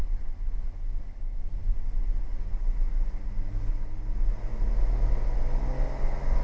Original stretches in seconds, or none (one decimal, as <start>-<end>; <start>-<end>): 0.0-6.4